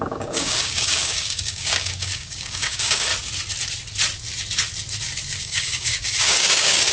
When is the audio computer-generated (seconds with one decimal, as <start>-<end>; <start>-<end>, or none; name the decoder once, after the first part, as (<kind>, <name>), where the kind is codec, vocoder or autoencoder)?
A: 0.0-3.1 (codec, DAC); 5.4-6.9